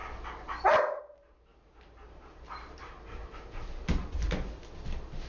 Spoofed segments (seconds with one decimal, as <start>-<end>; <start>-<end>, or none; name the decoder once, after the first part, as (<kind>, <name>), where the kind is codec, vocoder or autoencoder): 1.5-3.7 (vocoder, BigVGAN v2)

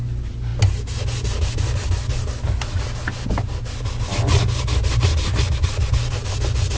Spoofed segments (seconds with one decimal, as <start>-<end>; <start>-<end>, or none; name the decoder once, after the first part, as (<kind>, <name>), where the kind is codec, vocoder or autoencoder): none

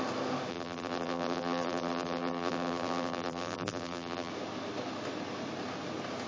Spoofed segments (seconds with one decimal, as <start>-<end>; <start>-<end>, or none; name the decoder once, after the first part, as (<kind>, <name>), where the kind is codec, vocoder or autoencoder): 0.5-4.3 (vocoder, BigVGAN v2)

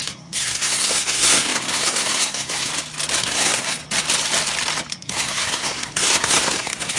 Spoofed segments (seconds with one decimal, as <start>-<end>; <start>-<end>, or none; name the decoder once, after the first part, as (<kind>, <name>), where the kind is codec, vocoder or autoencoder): 0.0-2.7 (codec, SNAC); 3.2-3.8; 4.9-7.0

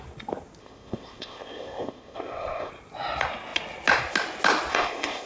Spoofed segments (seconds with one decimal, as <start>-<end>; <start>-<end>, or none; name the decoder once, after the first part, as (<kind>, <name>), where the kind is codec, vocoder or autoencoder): 0.6-2.7 (codec, ZipCodec); 4.7-5.3

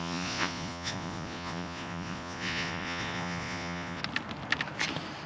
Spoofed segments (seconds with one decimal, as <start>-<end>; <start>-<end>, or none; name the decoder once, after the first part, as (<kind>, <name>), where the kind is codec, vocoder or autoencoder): 0.0-4.0 (vocoder, Vocos)